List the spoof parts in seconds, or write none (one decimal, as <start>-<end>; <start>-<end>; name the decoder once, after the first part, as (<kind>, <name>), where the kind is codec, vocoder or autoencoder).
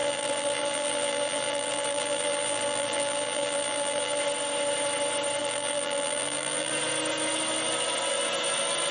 0.0-4.2 (vocoder, BigVGAN v2); 5.4-6.7